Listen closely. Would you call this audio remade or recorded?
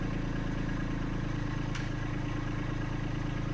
recorded